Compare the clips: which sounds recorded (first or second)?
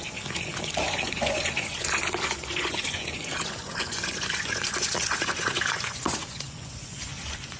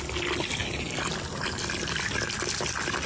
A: second